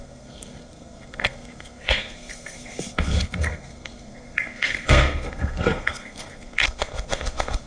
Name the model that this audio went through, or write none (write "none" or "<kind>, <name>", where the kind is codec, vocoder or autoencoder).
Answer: codec, SNAC